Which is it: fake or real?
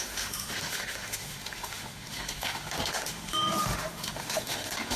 fake